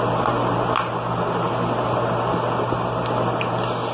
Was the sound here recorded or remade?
recorded